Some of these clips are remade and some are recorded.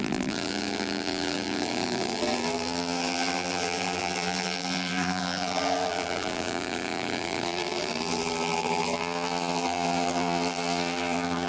remade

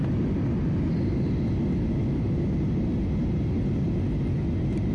recorded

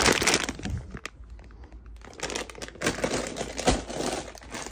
recorded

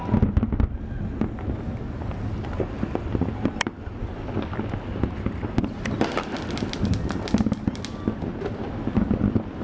recorded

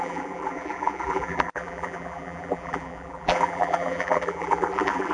remade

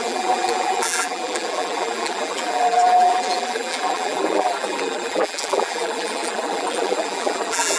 remade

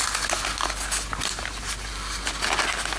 recorded